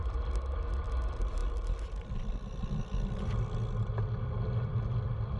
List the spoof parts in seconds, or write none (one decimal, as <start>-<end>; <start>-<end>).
none